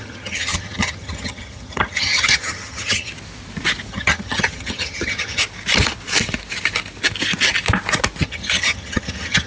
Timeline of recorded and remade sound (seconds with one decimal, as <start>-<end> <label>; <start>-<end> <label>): 0.0-3.1 remade; 3.1-3.9 recorded; 3.9-5.4 remade; 5.4-8.2 recorded; 8.2-9.5 remade